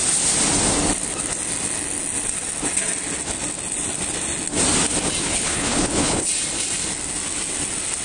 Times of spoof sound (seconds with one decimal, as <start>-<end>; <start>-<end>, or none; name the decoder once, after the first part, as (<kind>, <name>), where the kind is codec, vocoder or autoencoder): 5.2-6.3 (codec, HILCodec)